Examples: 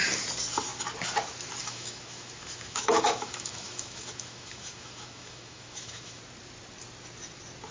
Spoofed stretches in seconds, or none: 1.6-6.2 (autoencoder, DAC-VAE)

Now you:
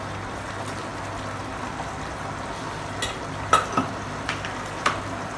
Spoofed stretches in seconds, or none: none